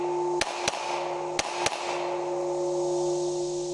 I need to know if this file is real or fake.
real